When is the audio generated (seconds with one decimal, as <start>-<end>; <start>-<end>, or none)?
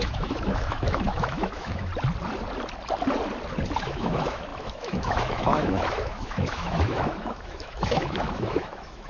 0.0-1.9; 3.8-9.1